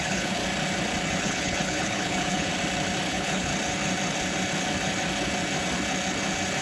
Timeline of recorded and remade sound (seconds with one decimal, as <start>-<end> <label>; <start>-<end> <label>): 0.0-0.4 remade; 0.4-1.2 recorded; 1.2-2.5 remade; 2.5-3.1 recorded; 3.1-3.5 remade; 3.5-6.6 recorded